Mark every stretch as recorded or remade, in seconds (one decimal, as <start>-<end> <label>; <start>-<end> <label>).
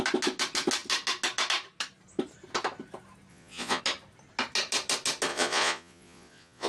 0.0-3.3 recorded; 3.3-3.8 remade; 3.8-5.3 recorded; 5.3-6.7 remade